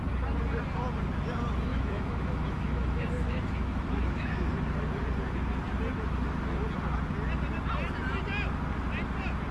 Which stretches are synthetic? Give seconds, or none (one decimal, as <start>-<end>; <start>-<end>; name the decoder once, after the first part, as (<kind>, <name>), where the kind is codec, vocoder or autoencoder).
1.7-4.5 (autoencoder, DAC-VAE)